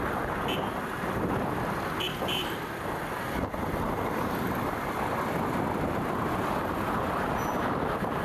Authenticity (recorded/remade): recorded